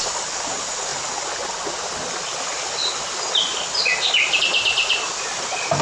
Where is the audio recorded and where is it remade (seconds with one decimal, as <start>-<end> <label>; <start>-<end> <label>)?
0.0-5.8 recorded